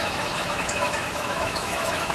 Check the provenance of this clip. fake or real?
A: fake